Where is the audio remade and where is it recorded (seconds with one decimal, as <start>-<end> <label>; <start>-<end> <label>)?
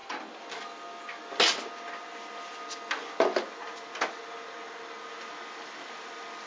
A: 0.0-6.5 recorded